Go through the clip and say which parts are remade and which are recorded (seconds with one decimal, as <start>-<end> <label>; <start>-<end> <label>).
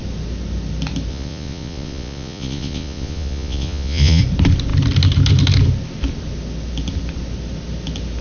0.0-1.1 recorded; 1.1-4.2 remade; 4.2-8.2 recorded